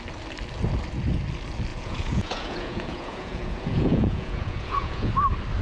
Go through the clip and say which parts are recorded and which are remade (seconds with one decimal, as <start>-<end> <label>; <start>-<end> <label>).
0.0-1.7 recorded; 1.7-5.1 remade; 5.1-5.6 recorded